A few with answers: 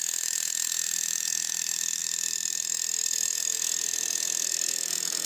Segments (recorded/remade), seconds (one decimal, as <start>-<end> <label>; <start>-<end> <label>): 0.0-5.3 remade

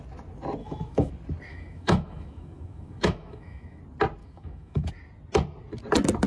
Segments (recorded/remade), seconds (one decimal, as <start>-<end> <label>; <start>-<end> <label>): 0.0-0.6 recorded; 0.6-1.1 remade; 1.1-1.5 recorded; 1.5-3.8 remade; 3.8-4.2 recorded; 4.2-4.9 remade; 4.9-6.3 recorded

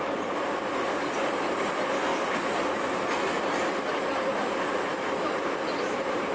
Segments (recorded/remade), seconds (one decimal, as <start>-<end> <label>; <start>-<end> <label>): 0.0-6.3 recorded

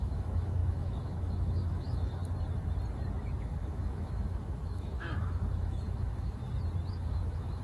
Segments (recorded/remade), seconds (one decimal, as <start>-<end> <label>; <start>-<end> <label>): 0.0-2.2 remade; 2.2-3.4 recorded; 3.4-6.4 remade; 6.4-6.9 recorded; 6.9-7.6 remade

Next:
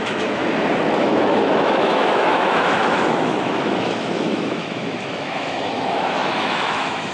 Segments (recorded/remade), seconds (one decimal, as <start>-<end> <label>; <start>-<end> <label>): 0.0-0.4 remade; 0.4-1.0 recorded; 1.0-7.1 remade

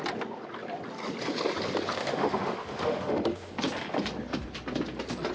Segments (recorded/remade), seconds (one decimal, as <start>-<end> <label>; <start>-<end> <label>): 0.0-2.0 recorded; 2.0-3.5 remade; 3.5-5.3 recorded